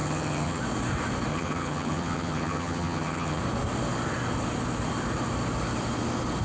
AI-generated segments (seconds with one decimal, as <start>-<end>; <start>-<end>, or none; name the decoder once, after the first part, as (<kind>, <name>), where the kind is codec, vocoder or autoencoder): 0.0-0.6 (vocoder, HiFi-GAN); 1.3-3.4